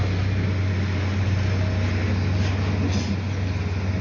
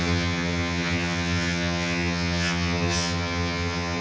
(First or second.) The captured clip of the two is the first